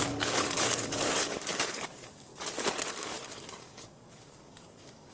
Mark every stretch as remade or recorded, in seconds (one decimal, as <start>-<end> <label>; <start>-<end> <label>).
0.0-2.3 remade; 2.3-2.9 recorded; 2.9-5.1 remade